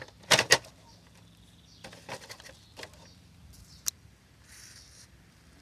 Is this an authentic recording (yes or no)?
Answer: no